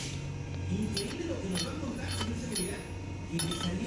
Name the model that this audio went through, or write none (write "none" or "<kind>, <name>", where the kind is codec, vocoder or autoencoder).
none